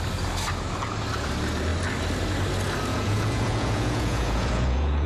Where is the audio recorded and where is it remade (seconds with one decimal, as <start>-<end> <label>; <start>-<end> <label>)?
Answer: 0.0-2.9 recorded; 2.9-5.1 remade